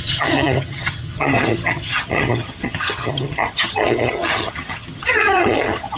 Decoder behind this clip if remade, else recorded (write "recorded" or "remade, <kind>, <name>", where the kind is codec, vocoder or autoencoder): remade, vocoder, HiFi-GAN